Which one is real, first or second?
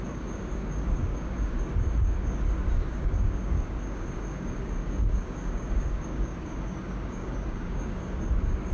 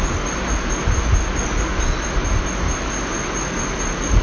second